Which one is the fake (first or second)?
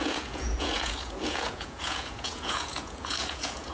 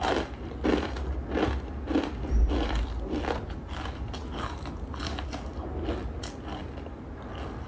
first